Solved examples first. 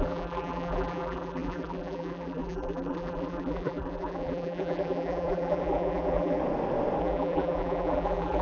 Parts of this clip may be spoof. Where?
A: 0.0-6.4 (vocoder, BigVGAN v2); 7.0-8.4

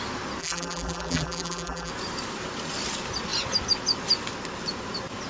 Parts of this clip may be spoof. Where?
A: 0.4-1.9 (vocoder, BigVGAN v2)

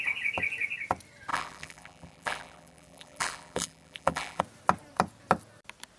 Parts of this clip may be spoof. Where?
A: 1.3-4.4 (vocoder, BigVGAN v2)

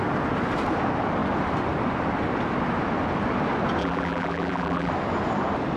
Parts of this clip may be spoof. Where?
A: 3.8-4.9 (vocoder, BigVGAN v2)